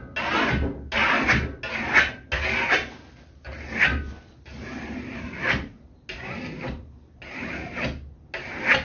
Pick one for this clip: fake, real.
real